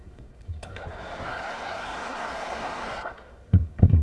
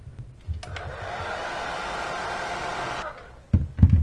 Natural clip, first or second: second